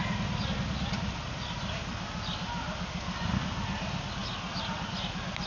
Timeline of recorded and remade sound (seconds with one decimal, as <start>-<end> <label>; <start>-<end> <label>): 0.0-5.5 recorded